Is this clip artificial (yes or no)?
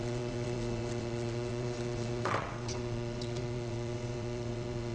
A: yes